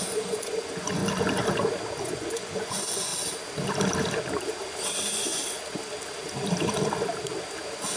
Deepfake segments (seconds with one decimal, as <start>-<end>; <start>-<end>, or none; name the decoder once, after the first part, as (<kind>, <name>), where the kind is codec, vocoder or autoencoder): 0.0-1.0 (vocoder, Vocos); 2.0-3.1; 5.0-5.4